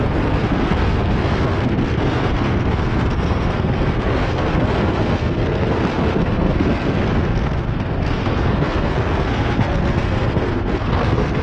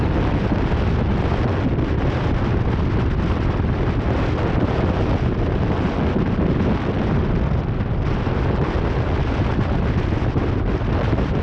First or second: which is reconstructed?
first